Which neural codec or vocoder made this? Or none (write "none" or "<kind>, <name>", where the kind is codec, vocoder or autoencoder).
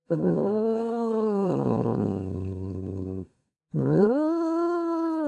codec, SNAC